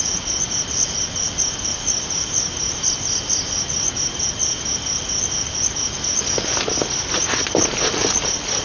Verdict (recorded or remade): recorded